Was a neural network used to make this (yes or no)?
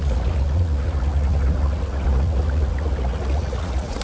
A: yes